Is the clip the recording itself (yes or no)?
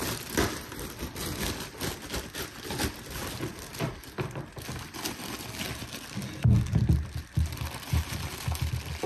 yes